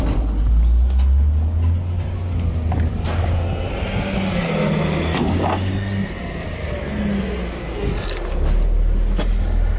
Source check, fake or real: real